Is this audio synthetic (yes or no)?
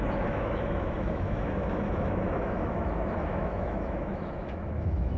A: yes